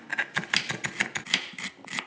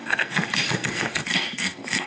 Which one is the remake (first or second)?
second